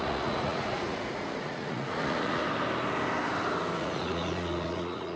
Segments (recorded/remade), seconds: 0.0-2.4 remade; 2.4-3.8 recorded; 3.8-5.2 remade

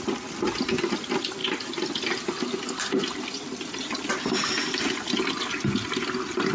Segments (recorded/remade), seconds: 0.0-6.5 recorded

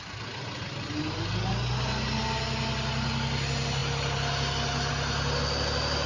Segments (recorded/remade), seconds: 0.0-6.1 recorded